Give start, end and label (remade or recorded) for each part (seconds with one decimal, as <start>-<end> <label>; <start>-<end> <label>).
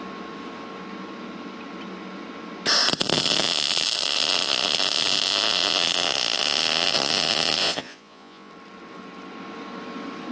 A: 0.0-7.6 recorded; 7.6-8.5 remade; 8.5-10.3 recorded